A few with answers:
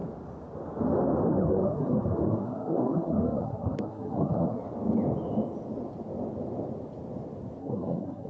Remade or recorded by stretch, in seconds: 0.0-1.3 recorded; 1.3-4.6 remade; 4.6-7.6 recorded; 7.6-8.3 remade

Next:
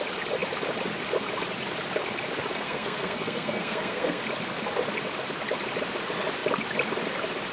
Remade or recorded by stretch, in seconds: 0.0-2.5 recorded; 2.5-4.2 remade; 4.2-7.5 recorded